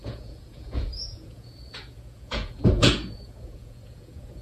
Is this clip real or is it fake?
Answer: fake